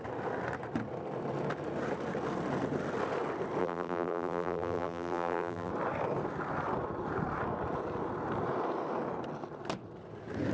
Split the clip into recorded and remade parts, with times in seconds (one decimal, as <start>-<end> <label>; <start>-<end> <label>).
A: 0.0-3.6 recorded; 3.6-5.7 remade; 5.7-10.5 recorded